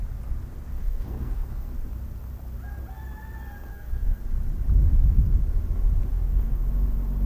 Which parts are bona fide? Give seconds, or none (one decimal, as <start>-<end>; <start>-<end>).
0.0-0.7; 1.7-3.7; 4.2-4.8; 5.3-6.1; 6.6-7.3